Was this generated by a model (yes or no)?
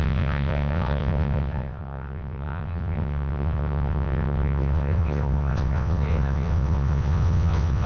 yes